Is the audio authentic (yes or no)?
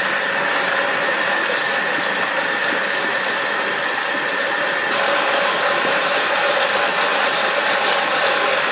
yes